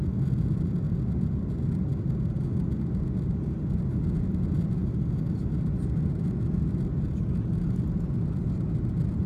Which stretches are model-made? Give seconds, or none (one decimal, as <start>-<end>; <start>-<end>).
none

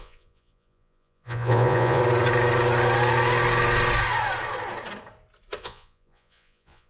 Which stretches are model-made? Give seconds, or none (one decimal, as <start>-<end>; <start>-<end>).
0.0-2.0; 5.6-6.9

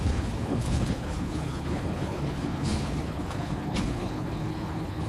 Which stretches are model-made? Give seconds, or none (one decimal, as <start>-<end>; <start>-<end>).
0.0-5.1

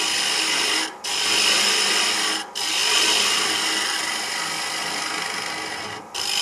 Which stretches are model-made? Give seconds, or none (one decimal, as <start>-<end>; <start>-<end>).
none

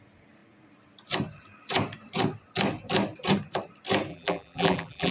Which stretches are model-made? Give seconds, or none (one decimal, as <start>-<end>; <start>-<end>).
4.1-5.1

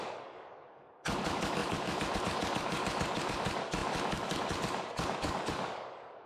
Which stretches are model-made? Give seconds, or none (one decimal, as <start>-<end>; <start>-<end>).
0.0-6.3